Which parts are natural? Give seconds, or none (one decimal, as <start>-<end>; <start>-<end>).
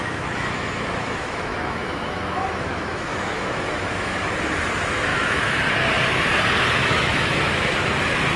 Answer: 4.3-5.1; 5.6-6.8; 7.7-8.4